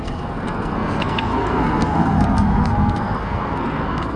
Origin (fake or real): fake